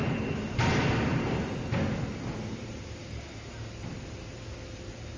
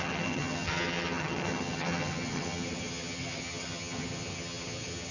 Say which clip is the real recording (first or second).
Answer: first